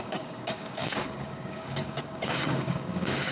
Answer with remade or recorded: remade